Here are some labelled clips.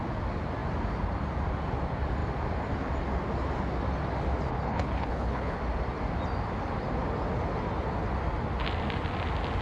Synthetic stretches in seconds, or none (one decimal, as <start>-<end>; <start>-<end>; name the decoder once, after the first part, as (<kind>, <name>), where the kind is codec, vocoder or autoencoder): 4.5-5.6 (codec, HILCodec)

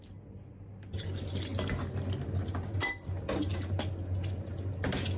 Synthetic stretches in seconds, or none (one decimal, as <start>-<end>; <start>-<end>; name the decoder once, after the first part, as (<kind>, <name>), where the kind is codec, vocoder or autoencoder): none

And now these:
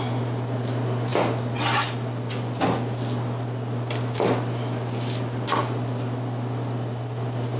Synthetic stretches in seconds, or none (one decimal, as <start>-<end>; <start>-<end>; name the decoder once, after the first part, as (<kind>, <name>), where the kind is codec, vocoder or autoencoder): none